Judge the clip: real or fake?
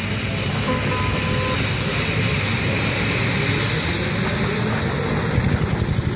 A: real